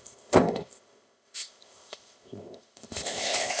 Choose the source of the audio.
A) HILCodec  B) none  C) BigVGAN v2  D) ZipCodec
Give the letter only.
D